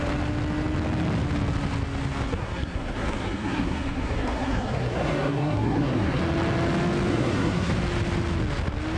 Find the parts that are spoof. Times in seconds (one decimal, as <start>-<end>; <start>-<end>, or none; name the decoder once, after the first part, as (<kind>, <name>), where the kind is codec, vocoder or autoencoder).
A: 2.3-6.2 (codec, SNAC); 7.1-7.7

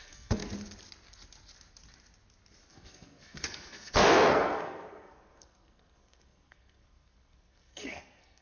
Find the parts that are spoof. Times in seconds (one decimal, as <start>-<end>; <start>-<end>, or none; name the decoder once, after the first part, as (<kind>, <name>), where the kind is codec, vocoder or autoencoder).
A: 0.0-0.4 (codec, SNAC); 2.7-8.4

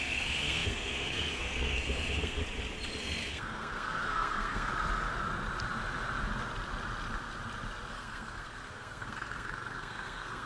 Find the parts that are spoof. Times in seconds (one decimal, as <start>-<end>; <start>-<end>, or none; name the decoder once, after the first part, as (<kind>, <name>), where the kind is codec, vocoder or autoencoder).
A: 0.0-2.4 (codec, SNAC); 3.0-4.7; 7.9-10.5

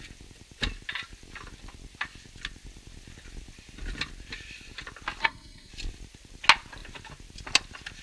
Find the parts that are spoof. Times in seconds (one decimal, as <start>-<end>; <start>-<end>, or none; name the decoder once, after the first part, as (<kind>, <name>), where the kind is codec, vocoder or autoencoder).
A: 5.2-5.7 (codec, SNAC)

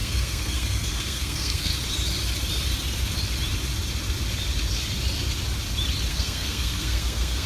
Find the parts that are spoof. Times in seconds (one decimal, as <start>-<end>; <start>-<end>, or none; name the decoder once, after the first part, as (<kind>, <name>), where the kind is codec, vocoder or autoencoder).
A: 0.0-1.7 (codec, SNAC); 6.1-7.5